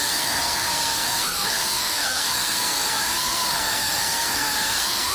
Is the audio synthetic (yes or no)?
yes